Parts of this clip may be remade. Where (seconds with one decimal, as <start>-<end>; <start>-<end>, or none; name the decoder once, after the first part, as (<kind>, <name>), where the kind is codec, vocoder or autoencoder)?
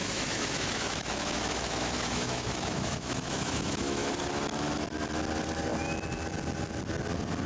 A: 0.0-4.1 (autoencoder, DAC-VAE)